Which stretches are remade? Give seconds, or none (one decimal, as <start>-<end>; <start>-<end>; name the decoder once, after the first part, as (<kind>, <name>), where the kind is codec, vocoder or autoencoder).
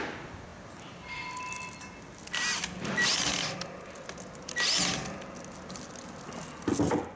none